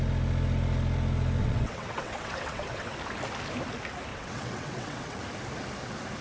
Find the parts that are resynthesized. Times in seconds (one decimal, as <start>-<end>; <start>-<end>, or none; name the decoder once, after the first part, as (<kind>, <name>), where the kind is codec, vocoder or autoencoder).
1.4-2.9 (vocoder, WaveNeXt); 4.1-5.2